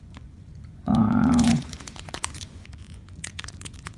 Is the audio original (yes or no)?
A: no